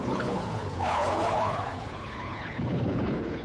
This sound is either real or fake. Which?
fake